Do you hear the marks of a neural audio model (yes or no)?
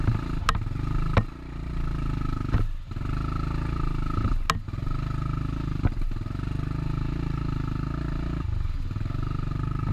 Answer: no